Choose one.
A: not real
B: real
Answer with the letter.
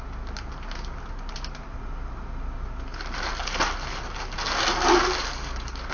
B